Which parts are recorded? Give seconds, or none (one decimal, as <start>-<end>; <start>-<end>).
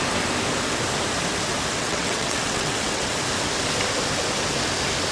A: 0.0-1.8; 3.1-5.1